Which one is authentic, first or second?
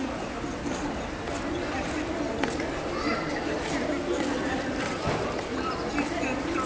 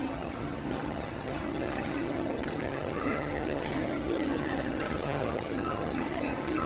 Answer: first